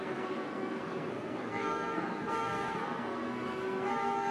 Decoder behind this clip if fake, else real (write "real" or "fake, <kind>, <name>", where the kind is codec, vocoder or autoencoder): fake, codec, SNAC